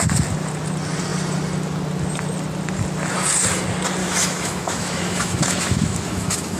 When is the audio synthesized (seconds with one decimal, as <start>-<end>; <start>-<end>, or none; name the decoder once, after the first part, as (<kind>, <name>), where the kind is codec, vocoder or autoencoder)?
4.0-6.6 (autoencoder, DAC-VAE)